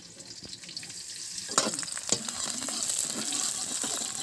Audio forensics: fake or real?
real